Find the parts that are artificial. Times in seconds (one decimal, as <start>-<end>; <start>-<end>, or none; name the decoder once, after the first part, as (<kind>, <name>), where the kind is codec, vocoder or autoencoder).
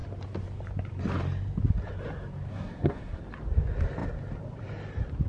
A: 2.5-3.2 (codec, SNAC)